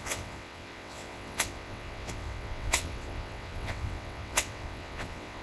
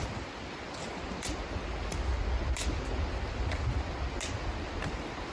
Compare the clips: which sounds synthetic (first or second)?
first